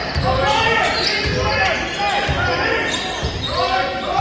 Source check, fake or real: real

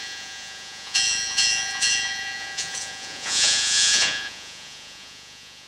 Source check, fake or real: fake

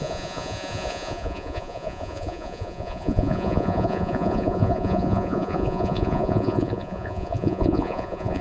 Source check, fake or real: fake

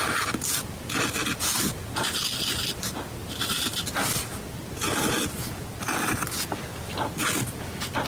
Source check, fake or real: real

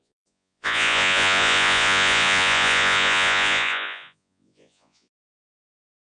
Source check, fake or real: fake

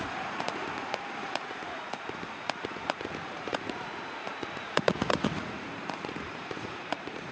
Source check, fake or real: fake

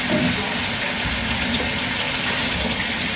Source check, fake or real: real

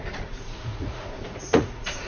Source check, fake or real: fake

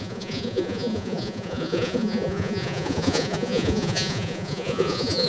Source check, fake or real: fake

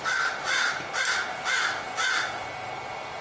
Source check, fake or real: real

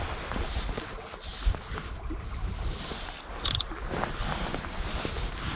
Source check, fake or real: real